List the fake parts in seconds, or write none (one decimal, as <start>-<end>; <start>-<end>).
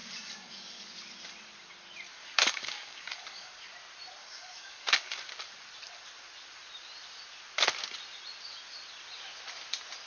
0.0-0.9; 2.1-3.5; 4.2-5.2